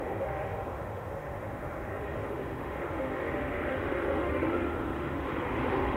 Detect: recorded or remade remade